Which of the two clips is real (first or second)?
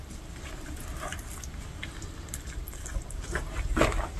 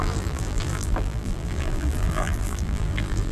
first